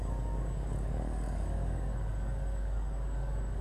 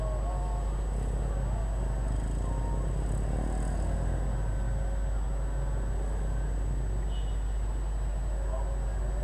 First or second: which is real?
second